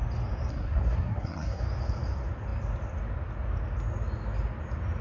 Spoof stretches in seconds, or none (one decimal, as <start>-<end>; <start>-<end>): 0.5-1.6